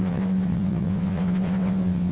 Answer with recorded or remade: remade